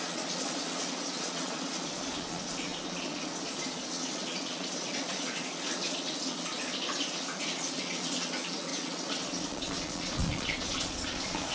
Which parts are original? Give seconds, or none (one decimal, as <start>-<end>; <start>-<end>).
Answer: none